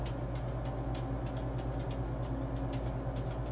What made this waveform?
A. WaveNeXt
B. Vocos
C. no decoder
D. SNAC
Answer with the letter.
C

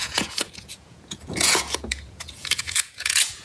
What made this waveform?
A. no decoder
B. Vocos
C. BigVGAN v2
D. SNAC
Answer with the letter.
B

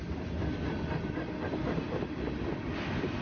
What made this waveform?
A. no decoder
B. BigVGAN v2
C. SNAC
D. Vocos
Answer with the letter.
A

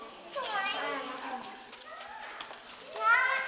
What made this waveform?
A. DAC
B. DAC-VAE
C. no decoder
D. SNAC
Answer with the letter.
C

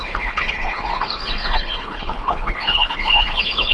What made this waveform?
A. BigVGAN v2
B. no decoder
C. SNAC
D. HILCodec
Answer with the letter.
D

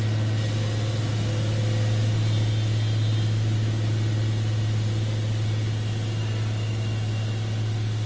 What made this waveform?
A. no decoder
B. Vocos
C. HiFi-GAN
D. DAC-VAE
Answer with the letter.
A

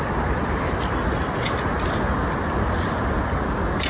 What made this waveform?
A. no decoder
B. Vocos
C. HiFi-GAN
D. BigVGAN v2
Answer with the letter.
A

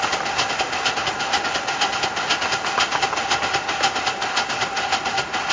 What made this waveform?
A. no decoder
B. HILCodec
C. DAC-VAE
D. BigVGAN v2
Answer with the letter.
A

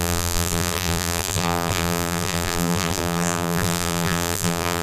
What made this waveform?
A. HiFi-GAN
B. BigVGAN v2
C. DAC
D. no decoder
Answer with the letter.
B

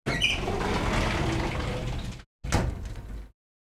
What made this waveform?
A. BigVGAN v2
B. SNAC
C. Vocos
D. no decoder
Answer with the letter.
D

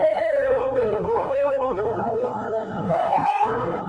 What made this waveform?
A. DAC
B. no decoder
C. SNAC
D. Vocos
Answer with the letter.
C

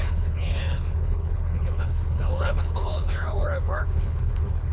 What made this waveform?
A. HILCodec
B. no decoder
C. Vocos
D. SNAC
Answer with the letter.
A